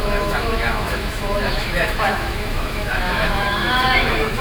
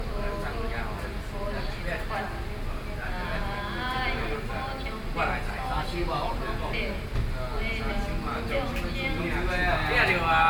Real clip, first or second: second